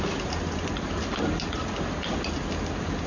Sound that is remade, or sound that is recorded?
recorded